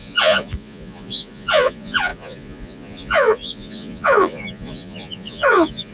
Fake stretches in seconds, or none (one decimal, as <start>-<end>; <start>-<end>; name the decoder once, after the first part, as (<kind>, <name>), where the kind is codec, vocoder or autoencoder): 0.0-5.9 (vocoder, Vocos)